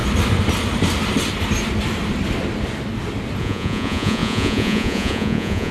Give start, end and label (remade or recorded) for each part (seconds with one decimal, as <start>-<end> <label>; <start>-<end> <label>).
0.0-3.4 recorded; 3.4-5.7 remade